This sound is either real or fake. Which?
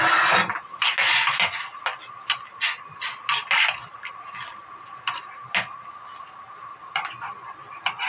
real